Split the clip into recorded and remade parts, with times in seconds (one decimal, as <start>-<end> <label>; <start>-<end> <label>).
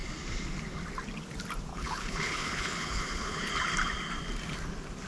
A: 0.0-1.7 recorded; 1.7-3.5 remade; 3.5-5.1 recorded